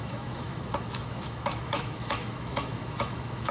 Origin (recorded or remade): remade